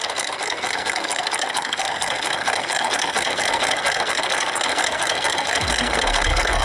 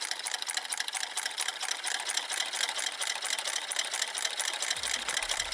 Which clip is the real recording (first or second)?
second